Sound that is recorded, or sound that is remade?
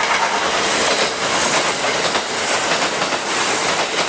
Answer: recorded